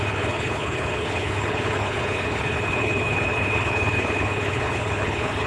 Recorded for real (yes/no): no